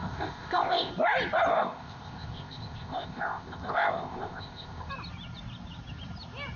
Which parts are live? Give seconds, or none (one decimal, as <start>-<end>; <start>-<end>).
0.9-1.5; 4.9-6.6